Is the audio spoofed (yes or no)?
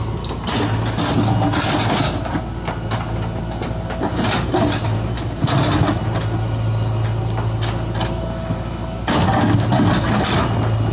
no